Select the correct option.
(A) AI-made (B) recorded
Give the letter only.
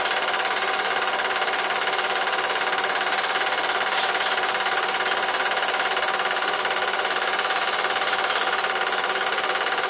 B